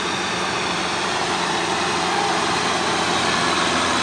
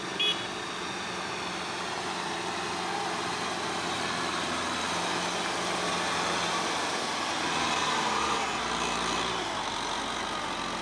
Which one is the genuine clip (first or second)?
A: second